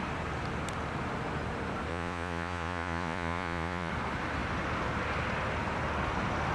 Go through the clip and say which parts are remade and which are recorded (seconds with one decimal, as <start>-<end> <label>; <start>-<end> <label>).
0.0-1.9 recorded; 1.9-3.9 remade; 3.9-6.5 recorded